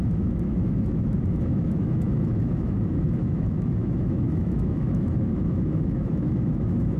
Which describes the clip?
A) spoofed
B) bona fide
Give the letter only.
A